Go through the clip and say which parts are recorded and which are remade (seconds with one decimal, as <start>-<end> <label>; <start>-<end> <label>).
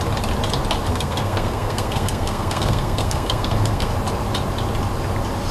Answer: 0.0-0.9 recorded; 0.9-3.9 remade; 3.9-5.5 recorded